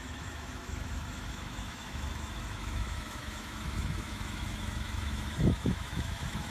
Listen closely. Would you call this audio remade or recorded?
remade